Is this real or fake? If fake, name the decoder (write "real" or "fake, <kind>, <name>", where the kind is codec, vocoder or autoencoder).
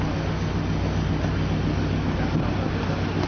real